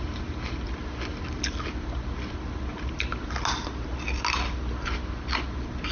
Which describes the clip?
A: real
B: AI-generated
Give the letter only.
A